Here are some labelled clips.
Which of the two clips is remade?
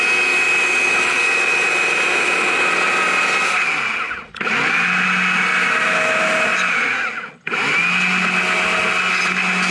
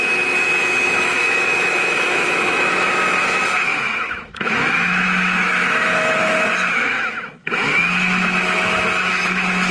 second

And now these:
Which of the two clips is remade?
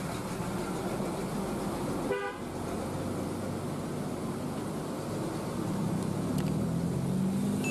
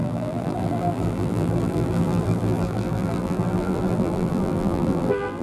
second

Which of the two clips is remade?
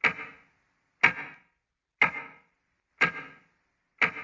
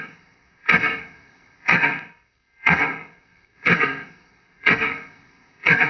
second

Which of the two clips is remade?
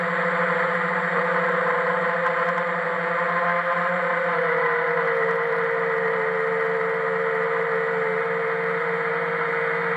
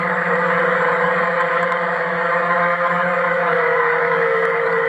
second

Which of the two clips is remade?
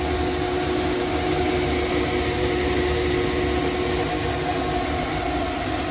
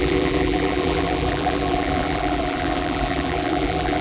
second